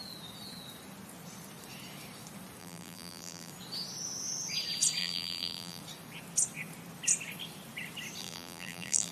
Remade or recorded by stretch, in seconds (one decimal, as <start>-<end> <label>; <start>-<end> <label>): 0.0-2.6 recorded; 2.6-3.5 remade; 3.5-5.0 recorded; 5.0-5.8 remade; 5.8-8.2 recorded; 8.2-9.1 remade